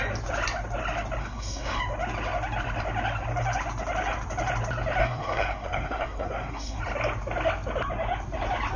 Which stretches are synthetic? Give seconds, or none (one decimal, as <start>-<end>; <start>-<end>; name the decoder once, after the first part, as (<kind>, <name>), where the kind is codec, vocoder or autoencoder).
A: 1.2-1.8 (codec, SNAC); 5.0-6.8